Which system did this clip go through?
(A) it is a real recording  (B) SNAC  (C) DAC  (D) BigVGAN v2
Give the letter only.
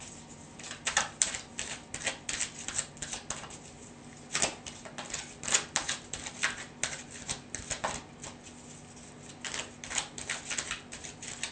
A